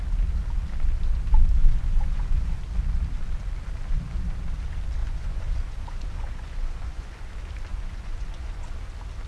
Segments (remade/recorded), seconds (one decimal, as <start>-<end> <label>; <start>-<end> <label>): 0.0-1.6 recorded; 1.6-2.6 remade; 2.6-5.0 recorded; 5.0-7.3 remade; 7.3-7.7 recorded; 7.7-8.6 remade; 8.6-9.3 recorded